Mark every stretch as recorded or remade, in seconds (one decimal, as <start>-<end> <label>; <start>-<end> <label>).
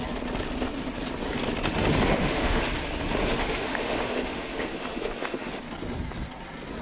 0.0-2.1 recorded; 2.1-2.6 remade; 2.6-3.2 recorded; 3.2-5.6 remade; 5.6-6.8 recorded